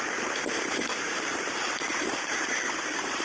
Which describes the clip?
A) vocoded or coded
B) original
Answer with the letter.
A